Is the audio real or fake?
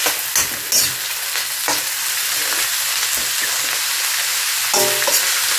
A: real